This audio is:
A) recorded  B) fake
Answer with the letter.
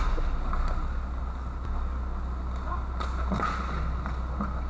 A